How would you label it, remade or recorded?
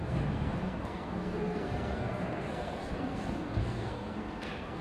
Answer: remade